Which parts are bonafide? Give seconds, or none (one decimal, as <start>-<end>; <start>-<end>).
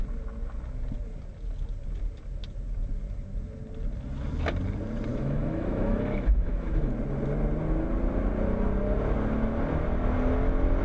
0.0-5.1; 6.9-10.8